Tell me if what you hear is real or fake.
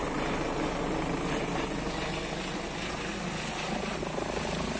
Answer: real